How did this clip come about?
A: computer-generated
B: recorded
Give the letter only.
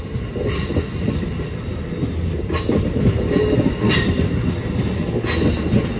B